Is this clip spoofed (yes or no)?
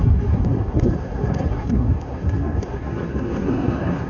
yes